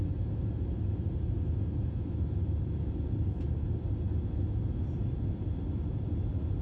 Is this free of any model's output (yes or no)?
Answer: yes